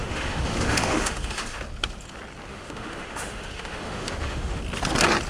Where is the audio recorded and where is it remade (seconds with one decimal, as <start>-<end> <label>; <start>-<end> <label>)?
0.0-1.6 remade; 1.6-2.5 recorded; 2.5-4.6 remade; 4.6-5.3 recorded